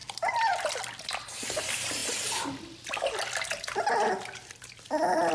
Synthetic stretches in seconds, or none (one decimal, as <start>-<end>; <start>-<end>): none